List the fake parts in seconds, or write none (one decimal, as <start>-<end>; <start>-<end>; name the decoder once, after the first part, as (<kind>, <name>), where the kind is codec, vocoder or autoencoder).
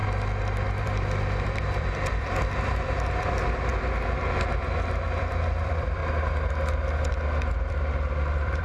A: 0.8-3.7 (vocoder, BigVGAN v2); 5.2-6.0; 7.5-8.6